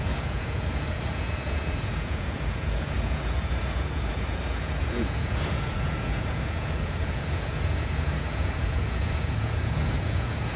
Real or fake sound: fake